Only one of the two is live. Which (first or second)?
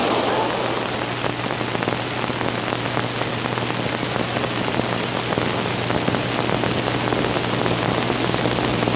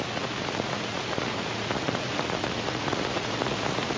first